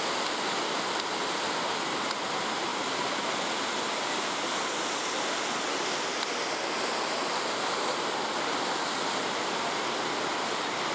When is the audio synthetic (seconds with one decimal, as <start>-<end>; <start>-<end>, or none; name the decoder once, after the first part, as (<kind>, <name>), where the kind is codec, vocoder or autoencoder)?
none